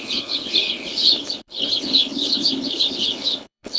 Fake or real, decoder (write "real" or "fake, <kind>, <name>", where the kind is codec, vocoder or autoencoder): fake, codec, HILCodec